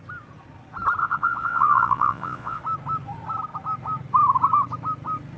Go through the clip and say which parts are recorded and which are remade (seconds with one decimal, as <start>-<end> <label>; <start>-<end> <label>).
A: 0.0-1.0 recorded; 1.0-2.6 remade; 2.6-5.4 recorded